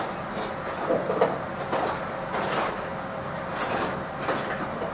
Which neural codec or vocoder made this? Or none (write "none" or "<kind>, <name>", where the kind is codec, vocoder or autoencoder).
none